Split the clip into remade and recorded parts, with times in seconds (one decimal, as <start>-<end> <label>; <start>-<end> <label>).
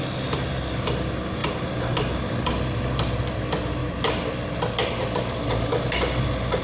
0.0-6.6 recorded